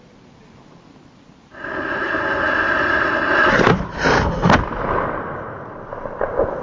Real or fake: real